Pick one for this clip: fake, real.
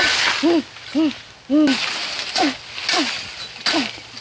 real